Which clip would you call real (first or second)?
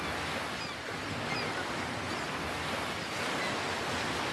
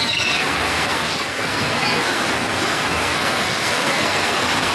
first